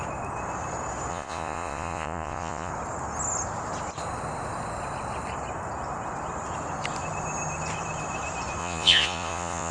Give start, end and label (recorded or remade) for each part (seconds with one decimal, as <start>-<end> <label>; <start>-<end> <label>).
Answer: 0.0-1.1 recorded; 1.1-2.7 remade; 2.7-8.6 recorded; 8.6-9.7 remade